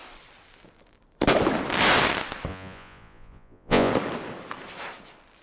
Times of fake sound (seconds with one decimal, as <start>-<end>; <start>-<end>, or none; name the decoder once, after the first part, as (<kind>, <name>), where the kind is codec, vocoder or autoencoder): 2.5-3.9 (vocoder, Vocos)